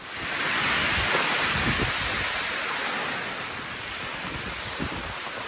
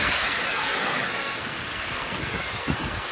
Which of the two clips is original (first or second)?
first